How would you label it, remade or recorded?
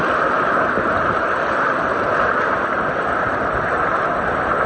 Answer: recorded